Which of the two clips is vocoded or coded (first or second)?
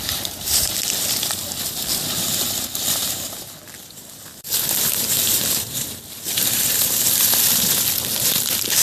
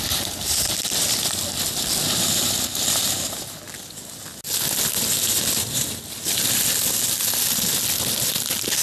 first